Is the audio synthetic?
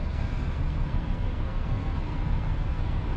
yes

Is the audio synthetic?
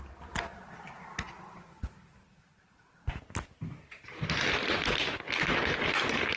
no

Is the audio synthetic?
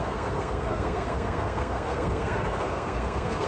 yes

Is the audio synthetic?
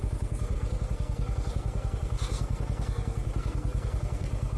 yes